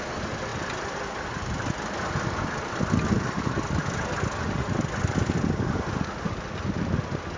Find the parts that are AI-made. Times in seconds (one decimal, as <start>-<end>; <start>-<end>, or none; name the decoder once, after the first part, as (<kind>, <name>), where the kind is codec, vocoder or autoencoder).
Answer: none